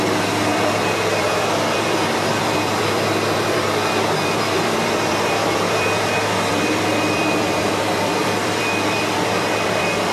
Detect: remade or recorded remade